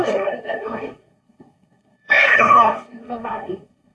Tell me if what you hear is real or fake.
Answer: fake